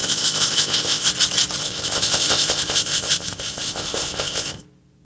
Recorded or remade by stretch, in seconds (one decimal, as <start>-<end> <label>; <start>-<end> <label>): 0.0-1.1 remade; 1.1-1.6 recorded; 1.6-4.6 remade; 4.6-5.0 recorded